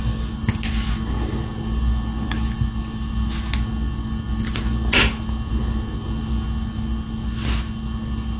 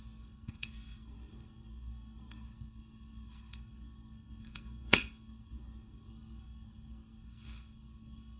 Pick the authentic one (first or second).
first